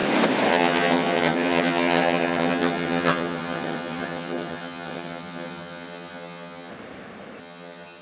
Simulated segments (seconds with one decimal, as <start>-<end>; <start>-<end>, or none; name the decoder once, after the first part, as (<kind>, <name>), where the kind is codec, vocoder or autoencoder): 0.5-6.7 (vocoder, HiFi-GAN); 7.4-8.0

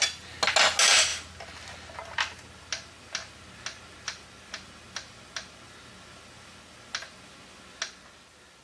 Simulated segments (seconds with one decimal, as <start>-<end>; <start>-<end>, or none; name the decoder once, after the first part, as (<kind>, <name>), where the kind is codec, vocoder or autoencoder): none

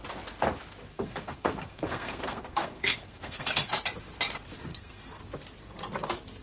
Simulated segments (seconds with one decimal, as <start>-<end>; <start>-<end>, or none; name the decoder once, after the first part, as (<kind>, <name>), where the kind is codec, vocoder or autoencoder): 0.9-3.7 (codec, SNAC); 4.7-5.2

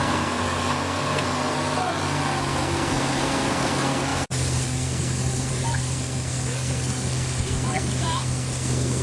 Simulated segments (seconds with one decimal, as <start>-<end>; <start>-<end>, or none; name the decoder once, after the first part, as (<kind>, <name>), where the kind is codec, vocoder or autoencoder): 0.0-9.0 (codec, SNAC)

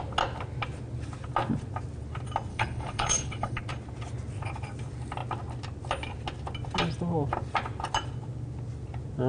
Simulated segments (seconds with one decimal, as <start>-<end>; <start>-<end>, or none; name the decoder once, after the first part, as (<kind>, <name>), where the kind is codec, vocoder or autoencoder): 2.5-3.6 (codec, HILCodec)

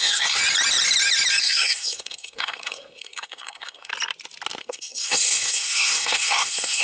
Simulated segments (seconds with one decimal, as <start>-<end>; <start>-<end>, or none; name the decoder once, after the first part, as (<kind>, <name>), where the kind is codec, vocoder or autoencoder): 0.0-0.4 (codec, SNAC); 1.4-3.9; 4.6-6.8